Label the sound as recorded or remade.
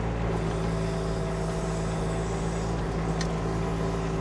recorded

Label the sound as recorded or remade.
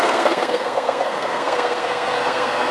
remade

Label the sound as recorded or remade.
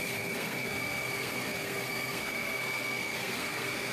remade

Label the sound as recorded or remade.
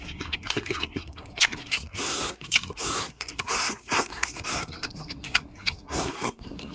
remade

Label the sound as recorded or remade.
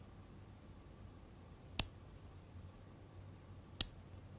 recorded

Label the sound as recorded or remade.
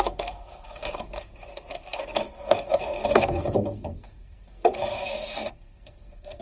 remade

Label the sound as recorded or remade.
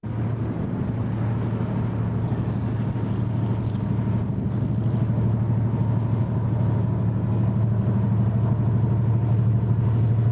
recorded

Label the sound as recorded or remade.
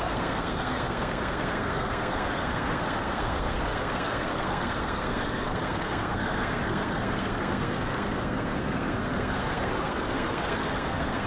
remade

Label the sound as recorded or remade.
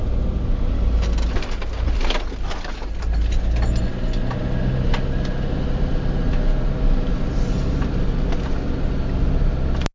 recorded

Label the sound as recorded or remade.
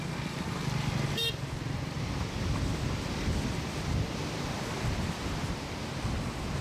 recorded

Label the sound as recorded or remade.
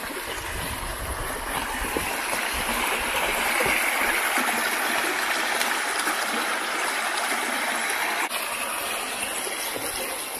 recorded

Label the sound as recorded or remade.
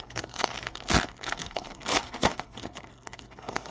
remade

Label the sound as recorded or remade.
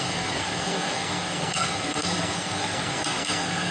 remade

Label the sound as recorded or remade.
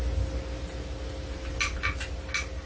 recorded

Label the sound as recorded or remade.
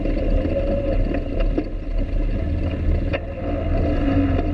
recorded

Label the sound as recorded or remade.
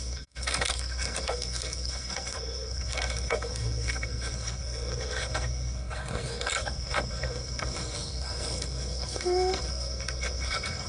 remade